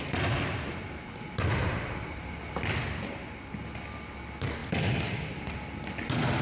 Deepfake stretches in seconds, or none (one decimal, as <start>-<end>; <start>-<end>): none